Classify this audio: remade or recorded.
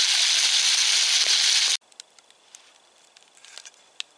recorded